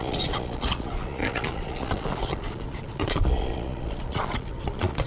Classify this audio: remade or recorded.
remade